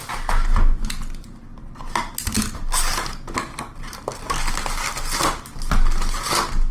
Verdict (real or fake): real